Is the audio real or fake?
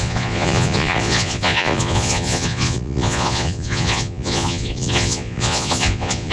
fake